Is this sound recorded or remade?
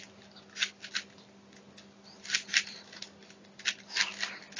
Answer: recorded